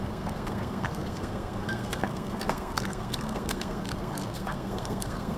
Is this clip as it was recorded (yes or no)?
no